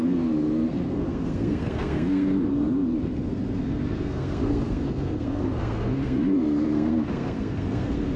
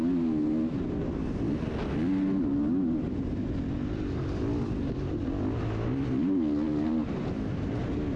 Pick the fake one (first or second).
first